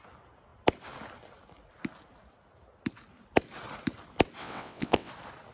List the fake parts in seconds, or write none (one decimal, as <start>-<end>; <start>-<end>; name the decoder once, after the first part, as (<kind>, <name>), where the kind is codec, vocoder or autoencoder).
4.4-5.1 (vocoder, WaveNeXt)